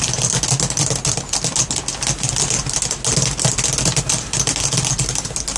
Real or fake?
real